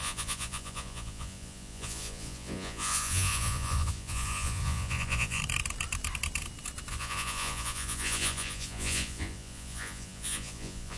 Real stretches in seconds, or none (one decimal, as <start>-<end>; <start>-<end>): 5.4-6.9